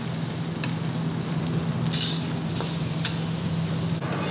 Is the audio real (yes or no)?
yes